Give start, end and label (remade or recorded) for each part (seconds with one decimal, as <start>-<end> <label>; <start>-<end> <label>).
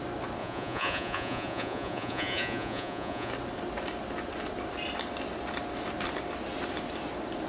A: 0.0-0.4 recorded; 0.4-3.3 remade; 3.3-7.5 recorded